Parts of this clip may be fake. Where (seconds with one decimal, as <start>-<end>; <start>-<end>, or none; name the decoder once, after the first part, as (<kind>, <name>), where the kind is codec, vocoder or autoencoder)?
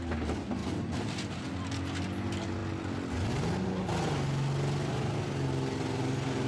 none